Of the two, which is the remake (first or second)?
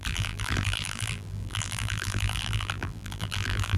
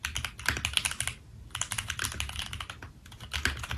first